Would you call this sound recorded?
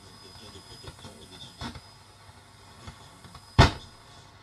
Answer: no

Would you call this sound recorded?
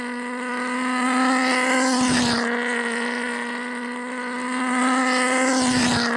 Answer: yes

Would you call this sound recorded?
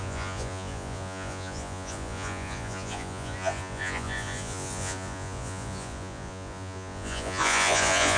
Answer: no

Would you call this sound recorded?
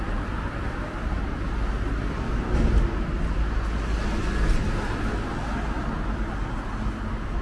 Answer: yes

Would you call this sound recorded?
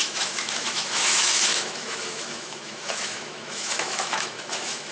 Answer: no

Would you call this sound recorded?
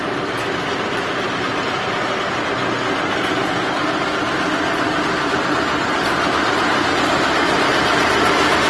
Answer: yes